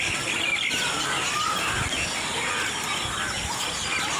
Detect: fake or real real